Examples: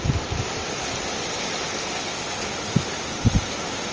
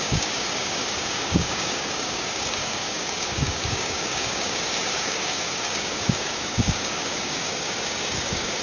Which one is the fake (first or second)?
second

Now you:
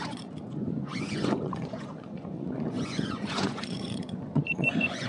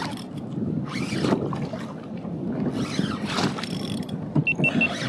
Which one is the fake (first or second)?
first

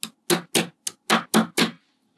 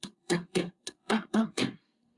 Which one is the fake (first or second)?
second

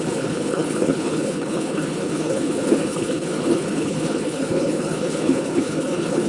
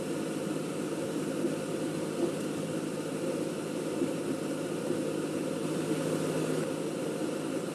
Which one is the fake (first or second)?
first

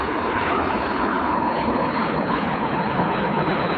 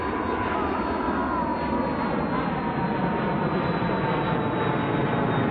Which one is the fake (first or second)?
first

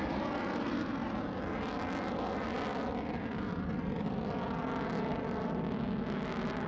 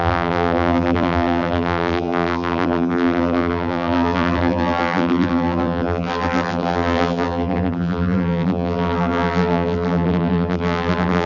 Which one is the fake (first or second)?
second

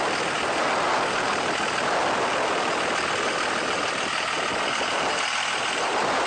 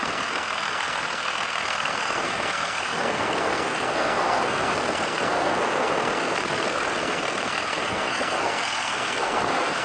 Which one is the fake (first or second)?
second